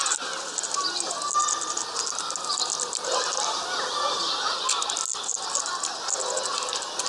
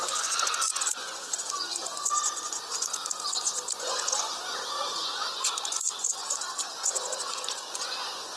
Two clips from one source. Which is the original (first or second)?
first